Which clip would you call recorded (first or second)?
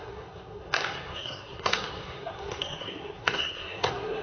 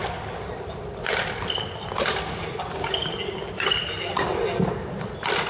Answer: second